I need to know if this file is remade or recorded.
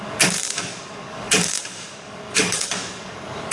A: remade